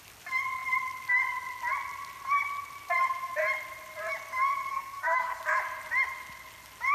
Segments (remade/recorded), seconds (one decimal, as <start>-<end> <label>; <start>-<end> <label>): 0.0-4.7 recorded; 4.7-5.4 remade; 5.4-6.9 recorded